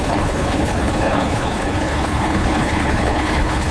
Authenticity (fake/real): fake